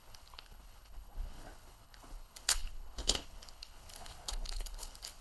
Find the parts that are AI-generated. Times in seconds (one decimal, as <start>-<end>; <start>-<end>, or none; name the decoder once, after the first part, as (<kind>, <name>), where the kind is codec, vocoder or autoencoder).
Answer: 0.0-5.2 (codec, HILCodec)